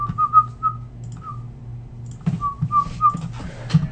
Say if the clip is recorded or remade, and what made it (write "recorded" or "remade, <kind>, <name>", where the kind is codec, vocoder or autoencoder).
recorded